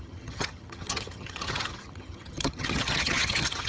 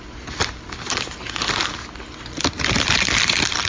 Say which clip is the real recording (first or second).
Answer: second